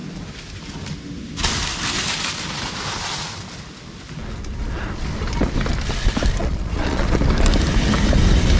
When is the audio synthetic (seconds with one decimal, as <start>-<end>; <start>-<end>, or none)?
6.4-7.2